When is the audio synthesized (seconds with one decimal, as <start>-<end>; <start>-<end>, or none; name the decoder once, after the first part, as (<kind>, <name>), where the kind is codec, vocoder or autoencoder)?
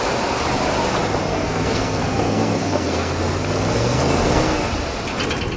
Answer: 1.3-4.7 (codec, SNAC)